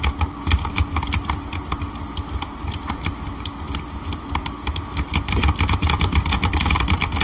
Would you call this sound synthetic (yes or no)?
no